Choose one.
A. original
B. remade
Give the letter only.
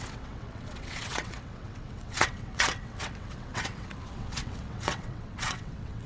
B